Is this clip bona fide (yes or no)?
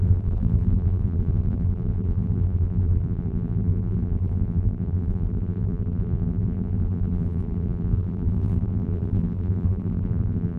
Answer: no